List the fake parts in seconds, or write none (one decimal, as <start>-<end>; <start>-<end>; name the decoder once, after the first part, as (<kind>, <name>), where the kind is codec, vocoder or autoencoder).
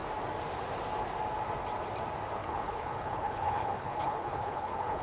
2.4-5.0 (codec, HILCodec)